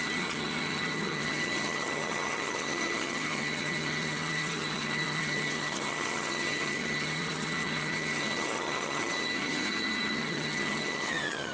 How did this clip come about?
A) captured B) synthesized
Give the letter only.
B